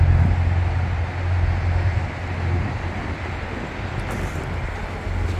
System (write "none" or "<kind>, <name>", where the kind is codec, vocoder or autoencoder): none